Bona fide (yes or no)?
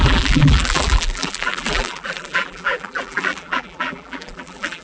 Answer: no